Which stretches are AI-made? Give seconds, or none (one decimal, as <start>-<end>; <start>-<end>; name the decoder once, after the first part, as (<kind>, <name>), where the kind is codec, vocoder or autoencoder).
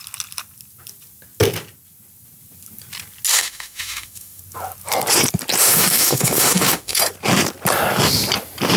3.3-4.4 (autoencoder, DAC-VAE); 5.6-7.0